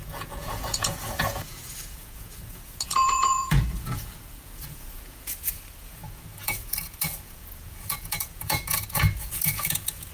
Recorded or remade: remade